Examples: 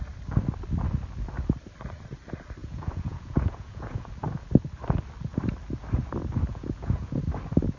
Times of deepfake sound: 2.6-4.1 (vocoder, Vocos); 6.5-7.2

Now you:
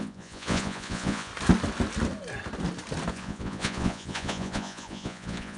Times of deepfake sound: 0.0-1.3 (vocoder, Vocos); 3.1-5.6

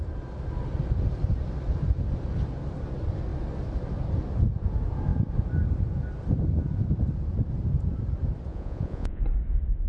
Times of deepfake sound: 8.5-9.2 (vocoder, Vocos)

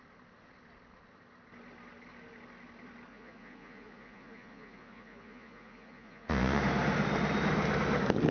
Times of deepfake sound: 3.1-6.6 (vocoder, Vocos)